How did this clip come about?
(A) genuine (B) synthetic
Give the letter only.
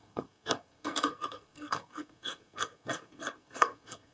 B